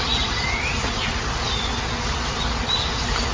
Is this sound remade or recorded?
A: recorded